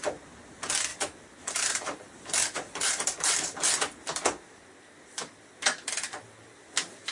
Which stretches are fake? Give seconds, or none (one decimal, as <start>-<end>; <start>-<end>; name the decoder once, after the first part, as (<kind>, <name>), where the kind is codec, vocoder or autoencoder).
0.9-4.0 (vocoder, BigVGAN v2)